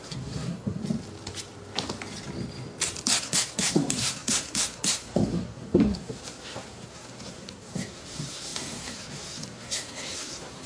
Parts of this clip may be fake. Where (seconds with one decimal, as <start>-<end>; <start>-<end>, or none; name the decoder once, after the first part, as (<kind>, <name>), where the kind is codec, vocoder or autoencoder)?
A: 0.0-0.8 (codec, SNAC); 3.2-10.7